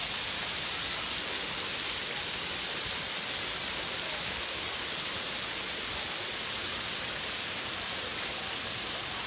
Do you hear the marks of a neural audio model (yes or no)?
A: no